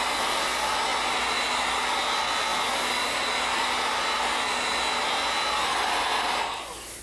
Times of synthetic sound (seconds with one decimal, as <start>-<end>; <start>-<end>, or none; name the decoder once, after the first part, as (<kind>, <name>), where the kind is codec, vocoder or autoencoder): none